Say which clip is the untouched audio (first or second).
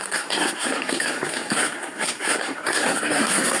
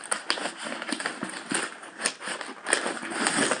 second